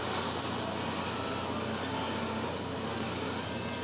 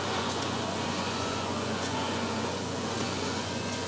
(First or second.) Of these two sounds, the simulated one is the second